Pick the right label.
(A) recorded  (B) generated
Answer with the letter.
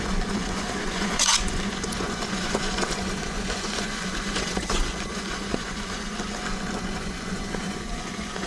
B